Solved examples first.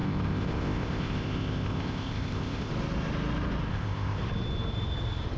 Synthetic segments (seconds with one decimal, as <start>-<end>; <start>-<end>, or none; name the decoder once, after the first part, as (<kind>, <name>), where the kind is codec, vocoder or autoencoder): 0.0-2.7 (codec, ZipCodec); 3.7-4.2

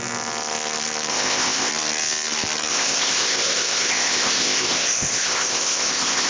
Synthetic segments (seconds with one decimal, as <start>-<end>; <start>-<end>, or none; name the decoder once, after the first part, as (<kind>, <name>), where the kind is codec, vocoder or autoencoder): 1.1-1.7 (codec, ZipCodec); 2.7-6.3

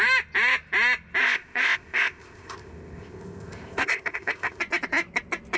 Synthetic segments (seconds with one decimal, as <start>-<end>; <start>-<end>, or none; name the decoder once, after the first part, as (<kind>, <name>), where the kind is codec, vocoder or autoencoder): 1.2-4.6 (codec, ZipCodec)

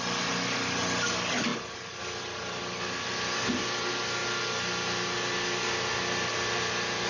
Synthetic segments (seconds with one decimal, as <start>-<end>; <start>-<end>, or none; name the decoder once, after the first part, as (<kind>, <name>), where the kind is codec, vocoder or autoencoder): none